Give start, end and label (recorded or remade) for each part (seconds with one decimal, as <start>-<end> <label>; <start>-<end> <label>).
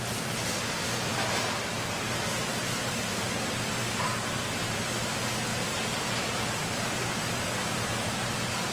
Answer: 0.0-2.4 recorded; 2.4-3.3 remade; 3.3-5.5 recorded; 5.5-7.4 remade; 7.4-8.7 recorded